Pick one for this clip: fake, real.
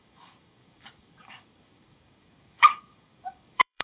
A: fake